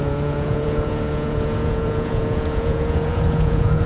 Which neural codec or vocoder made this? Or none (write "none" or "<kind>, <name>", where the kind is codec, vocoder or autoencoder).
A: vocoder, Vocos